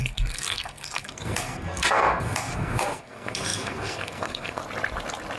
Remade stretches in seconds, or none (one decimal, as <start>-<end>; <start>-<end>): 0.0-4.6